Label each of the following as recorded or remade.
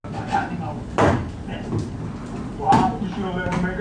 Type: recorded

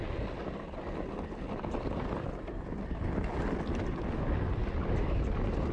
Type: recorded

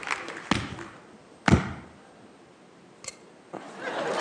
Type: recorded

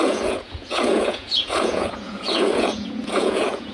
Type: remade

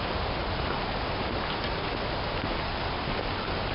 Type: recorded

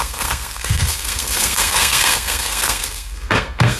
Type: remade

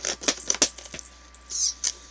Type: recorded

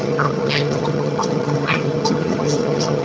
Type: remade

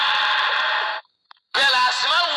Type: remade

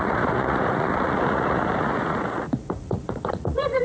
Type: remade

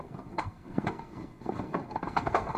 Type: remade